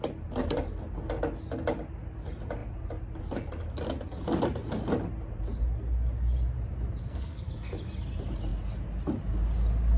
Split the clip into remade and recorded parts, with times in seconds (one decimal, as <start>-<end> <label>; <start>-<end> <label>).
0.0-7.0 recorded; 7.0-7.8 remade; 7.8-10.0 recorded